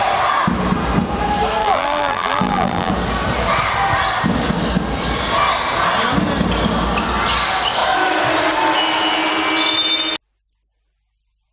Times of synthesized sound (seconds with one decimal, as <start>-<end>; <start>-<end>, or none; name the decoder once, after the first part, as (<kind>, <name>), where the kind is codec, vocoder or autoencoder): 1.6-2.9 (vocoder, BigVGAN v2)